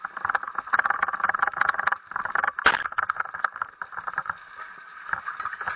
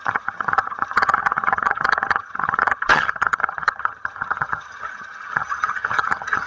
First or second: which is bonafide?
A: first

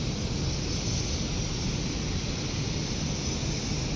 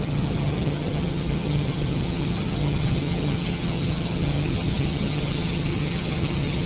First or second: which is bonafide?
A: first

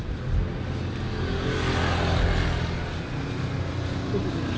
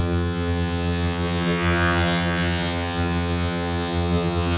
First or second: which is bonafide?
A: first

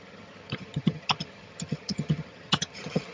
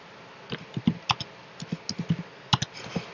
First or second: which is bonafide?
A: second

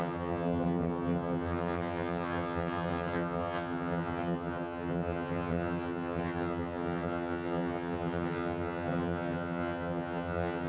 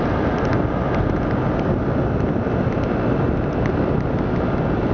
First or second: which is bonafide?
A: second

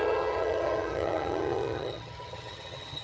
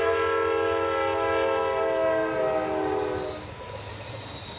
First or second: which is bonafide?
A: second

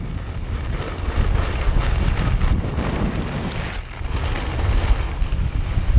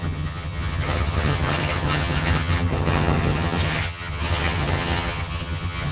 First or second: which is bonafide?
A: first